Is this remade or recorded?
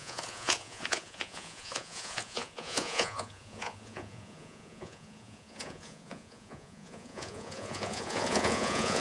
remade